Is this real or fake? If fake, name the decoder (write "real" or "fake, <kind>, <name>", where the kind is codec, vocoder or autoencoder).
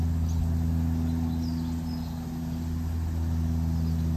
real